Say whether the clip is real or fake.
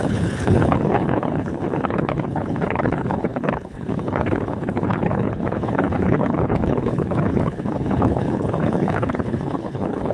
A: fake